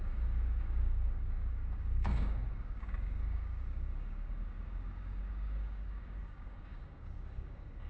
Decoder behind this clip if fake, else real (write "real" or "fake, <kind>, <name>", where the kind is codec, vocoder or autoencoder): fake, codec, DAC